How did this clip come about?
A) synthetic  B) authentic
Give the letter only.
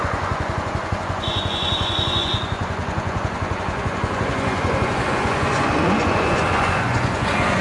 A